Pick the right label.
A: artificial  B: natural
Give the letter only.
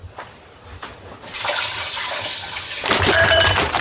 A